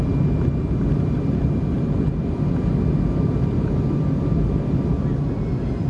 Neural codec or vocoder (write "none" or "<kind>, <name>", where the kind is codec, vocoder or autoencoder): none